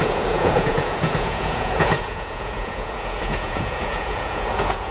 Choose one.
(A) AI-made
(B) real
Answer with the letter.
A